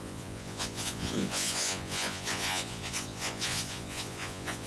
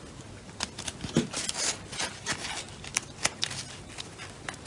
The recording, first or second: second